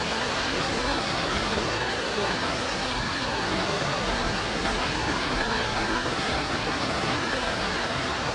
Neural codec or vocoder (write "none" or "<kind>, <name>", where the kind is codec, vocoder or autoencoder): codec, SNAC